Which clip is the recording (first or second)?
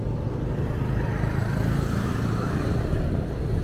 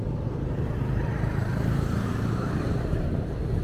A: first